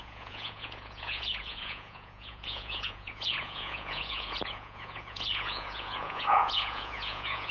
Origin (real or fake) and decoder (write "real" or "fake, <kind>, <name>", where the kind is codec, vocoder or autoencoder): fake, vocoder, Vocos